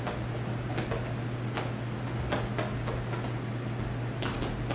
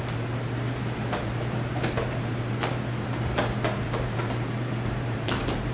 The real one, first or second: first